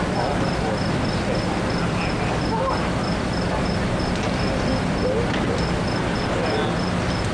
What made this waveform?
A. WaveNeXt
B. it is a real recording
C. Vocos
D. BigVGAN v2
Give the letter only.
B